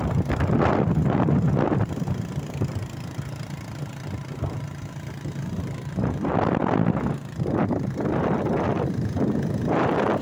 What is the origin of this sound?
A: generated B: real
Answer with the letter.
A